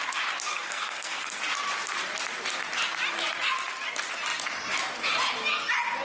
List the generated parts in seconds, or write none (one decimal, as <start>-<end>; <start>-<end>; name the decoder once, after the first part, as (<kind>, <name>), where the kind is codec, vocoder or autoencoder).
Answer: 0.5-1.4 (codec, SNAC)